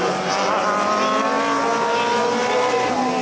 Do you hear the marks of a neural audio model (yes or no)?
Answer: no